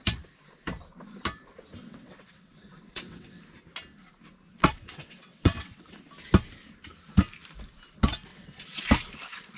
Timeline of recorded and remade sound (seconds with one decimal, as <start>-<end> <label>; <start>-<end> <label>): 0.0-1.8 recorded; 1.8-3.4 remade; 3.4-4.5 recorded; 4.5-6.0 remade; 6.0-8.3 recorded; 8.3-8.8 remade; 8.8-9.6 recorded